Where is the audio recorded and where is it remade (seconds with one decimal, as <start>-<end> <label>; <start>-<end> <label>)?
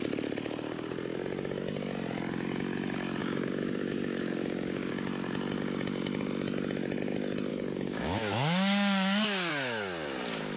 0.0-3.2 recorded; 3.2-4.9 remade; 4.9-7.5 recorded; 7.5-9.5 remade; 9.5-10.6 recorded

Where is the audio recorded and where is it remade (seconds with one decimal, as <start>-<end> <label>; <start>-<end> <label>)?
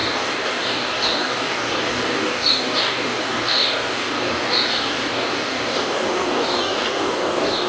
0.0-7.7 remade